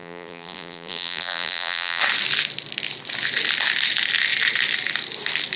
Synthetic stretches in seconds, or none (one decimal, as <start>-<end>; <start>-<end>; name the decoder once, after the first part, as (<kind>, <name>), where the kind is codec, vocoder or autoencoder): 0.0-2.0 (vocoder, BigVGAN v2)